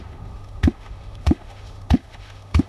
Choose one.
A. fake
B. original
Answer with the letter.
A